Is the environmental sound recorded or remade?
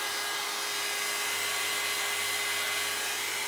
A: recorded